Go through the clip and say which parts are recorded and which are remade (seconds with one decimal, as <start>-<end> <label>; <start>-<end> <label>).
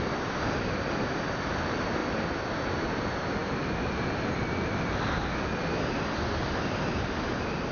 0.0-7.7 recorded